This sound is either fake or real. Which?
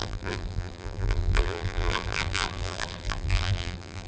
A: fake